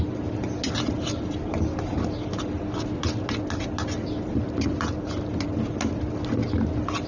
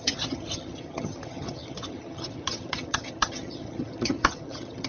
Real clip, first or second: first